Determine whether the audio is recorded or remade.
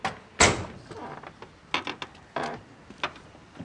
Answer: recorded